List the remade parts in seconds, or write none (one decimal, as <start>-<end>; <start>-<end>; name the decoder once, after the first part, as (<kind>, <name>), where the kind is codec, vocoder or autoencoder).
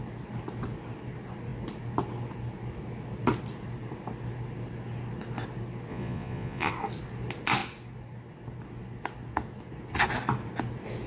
5.9-6.7 (vocoder, Vocos)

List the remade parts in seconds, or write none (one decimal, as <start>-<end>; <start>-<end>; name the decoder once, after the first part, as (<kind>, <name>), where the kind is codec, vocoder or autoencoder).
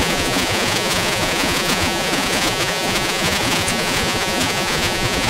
0.0-5.3 (vocoder, Vocos)